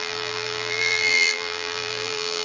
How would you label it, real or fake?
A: fake